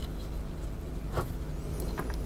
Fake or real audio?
real